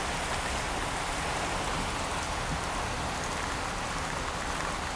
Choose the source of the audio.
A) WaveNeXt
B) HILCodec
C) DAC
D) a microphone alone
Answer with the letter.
D